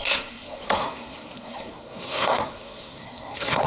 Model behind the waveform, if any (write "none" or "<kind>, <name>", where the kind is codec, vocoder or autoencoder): codec, SNAC